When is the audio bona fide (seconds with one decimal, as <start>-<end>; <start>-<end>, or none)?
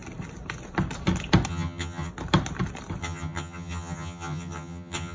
0.0-1.5; 2.1-3.0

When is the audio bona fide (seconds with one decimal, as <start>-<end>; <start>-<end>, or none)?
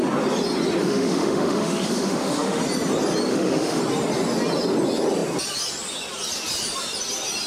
0.0-0.8; 2.6-3.3; 3.8-7.5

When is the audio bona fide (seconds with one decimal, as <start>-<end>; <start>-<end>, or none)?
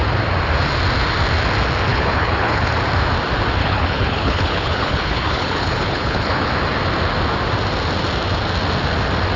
0.0-1.9; 2.7-3.6; 6.5-9.4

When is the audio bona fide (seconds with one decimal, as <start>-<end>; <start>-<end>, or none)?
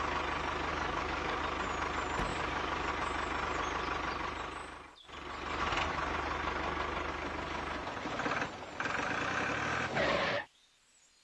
0.0-0.7; 1.4-2.3; 2.9-11.2